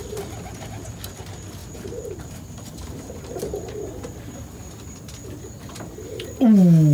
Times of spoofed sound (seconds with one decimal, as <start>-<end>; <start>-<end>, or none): 1.6-3.4